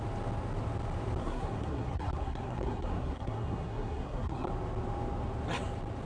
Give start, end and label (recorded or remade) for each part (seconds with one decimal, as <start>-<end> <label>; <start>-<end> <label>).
0.0-1.2 recorded; 1.2-4.5 remade; 4.5-6.1 recorded